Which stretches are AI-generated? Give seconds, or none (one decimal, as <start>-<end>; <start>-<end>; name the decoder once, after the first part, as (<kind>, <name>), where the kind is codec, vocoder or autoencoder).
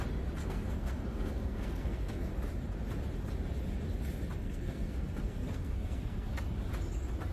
0.4-2.3 (codec, SNAC); 4.4-6.4